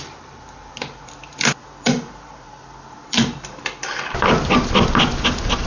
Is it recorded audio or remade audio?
remade